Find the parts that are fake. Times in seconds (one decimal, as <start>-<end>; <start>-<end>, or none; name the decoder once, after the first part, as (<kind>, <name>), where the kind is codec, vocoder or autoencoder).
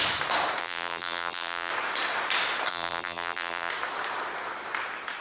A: 0.6-1.7 (vocoder, BigVGAN v2); 2.7-3.7